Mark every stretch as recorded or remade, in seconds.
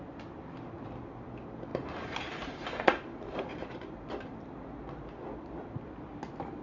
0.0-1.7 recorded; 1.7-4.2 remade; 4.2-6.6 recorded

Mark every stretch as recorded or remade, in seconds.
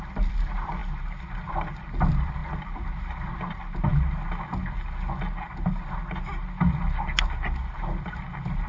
0.0-0.8 remade; 0.8-1.5 recorded; 1.5-3.9 remade; 3.9-8.7 recorded